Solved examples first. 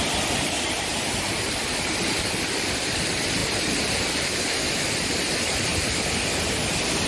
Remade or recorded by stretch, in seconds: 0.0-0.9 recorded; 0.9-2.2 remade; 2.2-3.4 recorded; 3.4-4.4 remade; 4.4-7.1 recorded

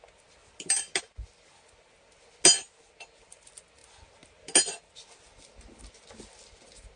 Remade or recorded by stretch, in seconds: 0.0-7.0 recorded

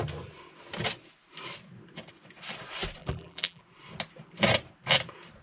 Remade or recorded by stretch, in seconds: 0.0-3.0 recorded; 3.0-3.6 remade; 3.6-5.4 recorded